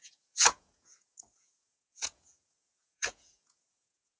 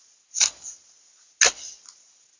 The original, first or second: second